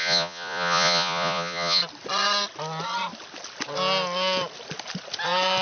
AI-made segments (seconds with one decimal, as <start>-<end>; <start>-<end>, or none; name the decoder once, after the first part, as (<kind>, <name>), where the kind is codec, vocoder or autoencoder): 0.0-1.8 (vocoder, Vocos)

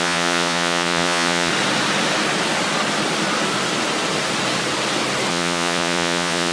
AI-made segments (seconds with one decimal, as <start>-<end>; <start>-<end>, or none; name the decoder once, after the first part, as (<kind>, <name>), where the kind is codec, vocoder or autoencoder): 0.0-1.5 (vocoder, Vocos); 5.3-6.5

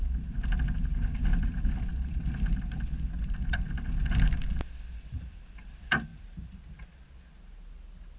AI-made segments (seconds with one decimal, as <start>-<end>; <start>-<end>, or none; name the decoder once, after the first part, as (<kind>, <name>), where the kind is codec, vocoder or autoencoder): none

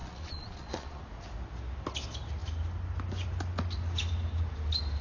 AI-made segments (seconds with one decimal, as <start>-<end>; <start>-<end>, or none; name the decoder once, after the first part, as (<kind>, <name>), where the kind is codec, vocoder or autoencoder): 0.0-1.0 (vocoder, Vocos)